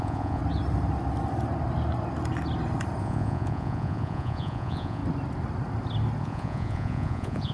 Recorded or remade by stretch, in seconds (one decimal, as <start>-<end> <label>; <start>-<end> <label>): 0.0-0.4 remade; 0.4-3.0 recorded; 3.0-5.0 remade; 5.0-6.2 recorded; 6.2-7.5 remade